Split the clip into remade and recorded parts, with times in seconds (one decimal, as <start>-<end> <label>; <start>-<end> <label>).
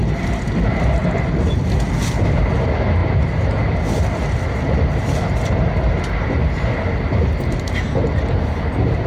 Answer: 0.0-9.1 recorded